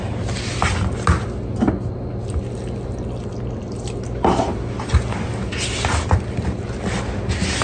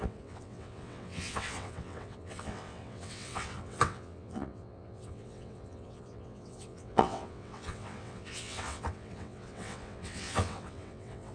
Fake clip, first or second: second